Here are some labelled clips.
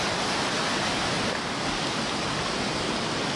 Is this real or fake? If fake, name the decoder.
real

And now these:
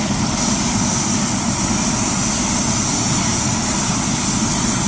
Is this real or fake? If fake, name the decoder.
real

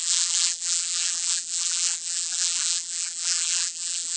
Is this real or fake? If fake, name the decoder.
fake, vocoder, BigVGAN v2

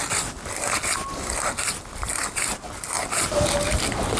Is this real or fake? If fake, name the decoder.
real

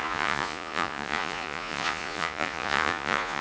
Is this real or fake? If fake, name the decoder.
fake, vocoder, Vocos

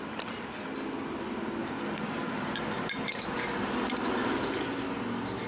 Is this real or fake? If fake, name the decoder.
real